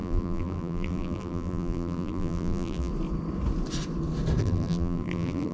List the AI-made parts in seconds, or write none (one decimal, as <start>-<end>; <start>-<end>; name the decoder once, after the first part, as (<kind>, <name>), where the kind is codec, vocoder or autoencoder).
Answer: 0.0-2.9 (vocoder, BigVGAN v2); 4.4-5.5